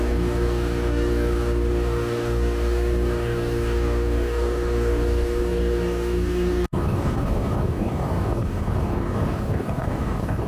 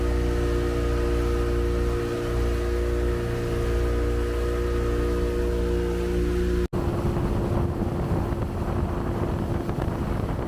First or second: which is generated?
first